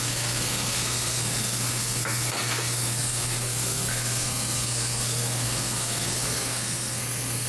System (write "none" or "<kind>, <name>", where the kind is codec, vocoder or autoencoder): codec, SNAC